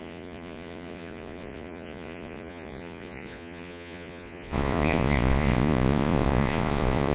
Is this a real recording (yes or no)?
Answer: no